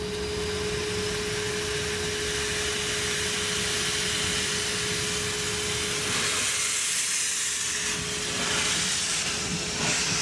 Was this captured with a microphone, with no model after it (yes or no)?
yes